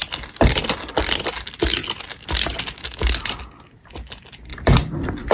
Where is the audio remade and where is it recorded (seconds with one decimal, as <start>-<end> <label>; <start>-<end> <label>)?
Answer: 0.0-5.3 recorded